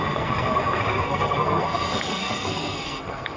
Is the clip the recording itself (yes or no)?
no